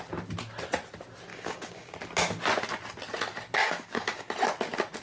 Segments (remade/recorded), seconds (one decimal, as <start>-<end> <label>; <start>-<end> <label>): 0.0-1.3 recorded; 1.3-1.9 remade; 1.9-3.6 recorded; 3.6-4.3 remade; 4.3-5.0 recorded